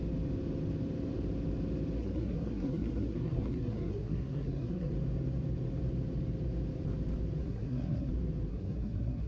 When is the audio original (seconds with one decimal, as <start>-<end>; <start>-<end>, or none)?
0.0-2.0; 4.9-7.4; 8.1-8.5